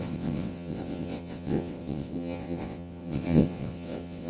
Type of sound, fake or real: fake